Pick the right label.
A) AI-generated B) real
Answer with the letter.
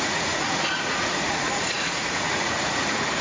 A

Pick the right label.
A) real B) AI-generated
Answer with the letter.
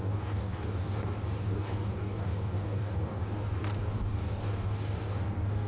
B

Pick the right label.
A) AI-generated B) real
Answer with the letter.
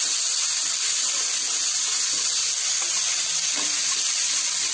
B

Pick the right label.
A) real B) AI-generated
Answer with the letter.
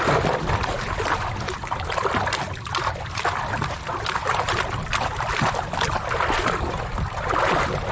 B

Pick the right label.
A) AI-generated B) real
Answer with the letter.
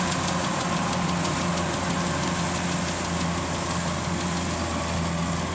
B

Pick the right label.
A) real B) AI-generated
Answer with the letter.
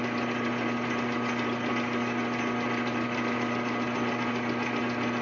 A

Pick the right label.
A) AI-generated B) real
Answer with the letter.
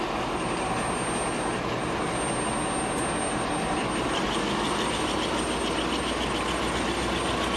B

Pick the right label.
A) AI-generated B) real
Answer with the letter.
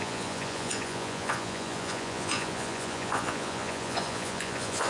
A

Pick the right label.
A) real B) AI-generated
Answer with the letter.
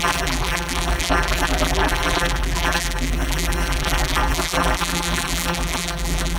B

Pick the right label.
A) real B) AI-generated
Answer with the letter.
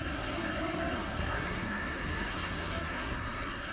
B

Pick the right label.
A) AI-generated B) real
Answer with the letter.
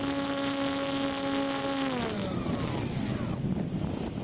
B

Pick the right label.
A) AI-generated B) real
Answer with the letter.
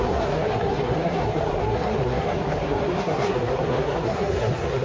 A